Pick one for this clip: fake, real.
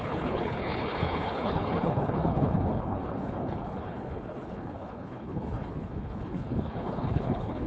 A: fake